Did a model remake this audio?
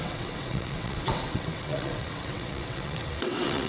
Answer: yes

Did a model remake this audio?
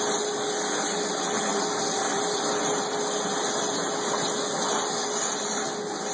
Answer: no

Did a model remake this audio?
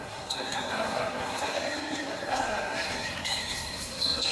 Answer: yes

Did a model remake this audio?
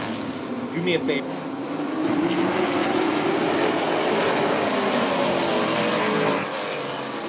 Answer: no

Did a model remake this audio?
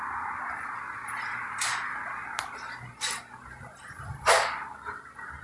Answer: no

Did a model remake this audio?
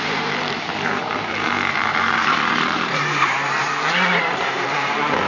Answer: yes